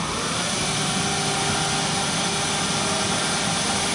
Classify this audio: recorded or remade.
recorded